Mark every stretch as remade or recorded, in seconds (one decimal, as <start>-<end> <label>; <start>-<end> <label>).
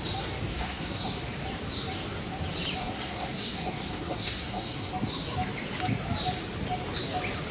0.0-0.5 recorded; 0.5-1.2 remade; 1.2-2.8 recorded; 2.8-4.9 remade; 4.9-7.5 recorded